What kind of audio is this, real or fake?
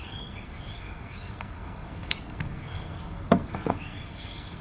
fake